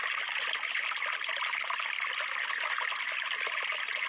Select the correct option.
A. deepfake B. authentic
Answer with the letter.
B